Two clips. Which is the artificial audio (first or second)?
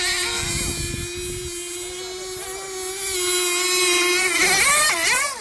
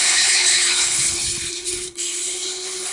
second